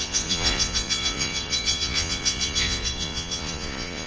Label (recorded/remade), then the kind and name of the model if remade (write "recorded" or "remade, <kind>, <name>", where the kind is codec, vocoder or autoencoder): remade, vocoder, Vocos